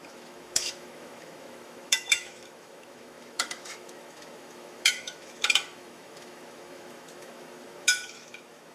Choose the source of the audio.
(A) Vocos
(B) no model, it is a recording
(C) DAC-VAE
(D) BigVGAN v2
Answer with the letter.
C